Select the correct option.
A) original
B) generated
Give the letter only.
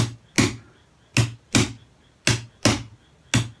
A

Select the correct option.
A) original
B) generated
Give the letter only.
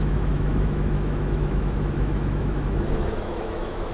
B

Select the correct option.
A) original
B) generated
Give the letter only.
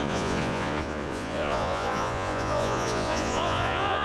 B